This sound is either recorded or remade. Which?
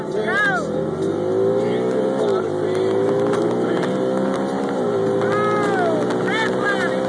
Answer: recorded